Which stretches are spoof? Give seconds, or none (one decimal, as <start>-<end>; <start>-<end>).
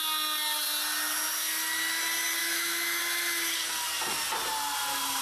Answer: 2.4-3.0